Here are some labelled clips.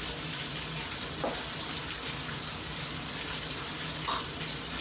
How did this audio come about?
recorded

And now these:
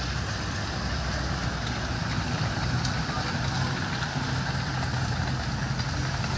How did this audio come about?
recorded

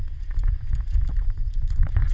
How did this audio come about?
remade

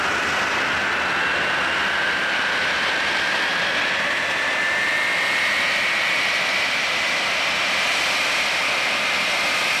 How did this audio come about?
recorded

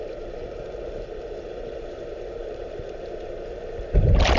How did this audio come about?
remade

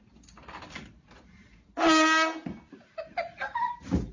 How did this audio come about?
recorded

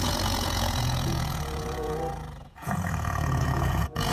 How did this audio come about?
remade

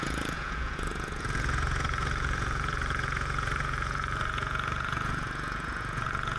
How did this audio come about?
remade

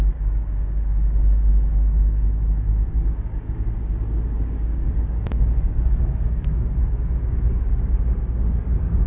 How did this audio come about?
remade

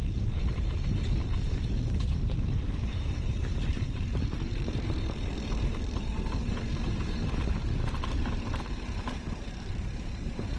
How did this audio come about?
remade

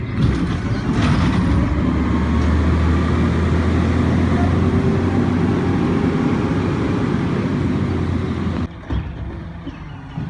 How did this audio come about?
recorded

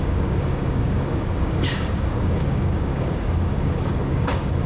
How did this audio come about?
remade